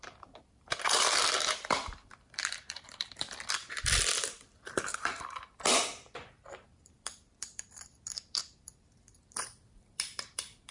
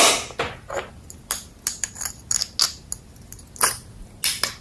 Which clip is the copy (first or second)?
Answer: first